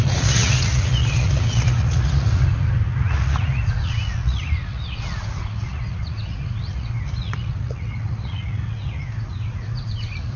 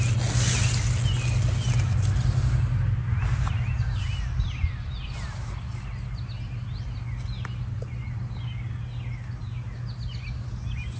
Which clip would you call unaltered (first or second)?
second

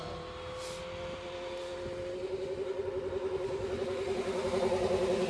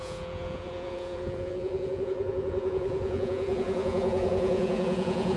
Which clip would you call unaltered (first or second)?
first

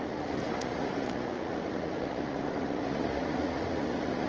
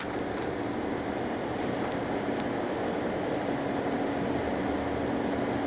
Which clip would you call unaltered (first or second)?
second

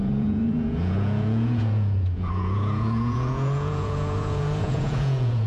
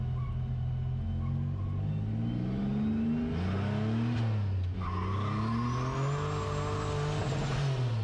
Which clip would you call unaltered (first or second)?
second